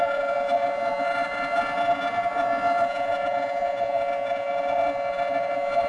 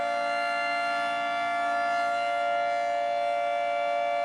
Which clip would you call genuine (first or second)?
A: second